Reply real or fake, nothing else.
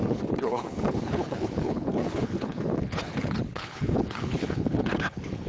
fake